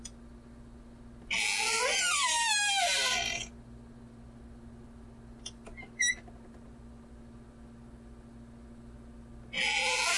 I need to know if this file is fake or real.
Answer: real